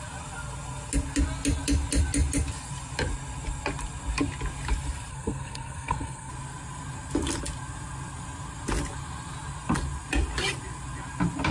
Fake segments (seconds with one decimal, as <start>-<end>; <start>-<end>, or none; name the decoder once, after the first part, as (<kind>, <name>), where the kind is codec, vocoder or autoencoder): 5.1-6.3 (codec, SNAC)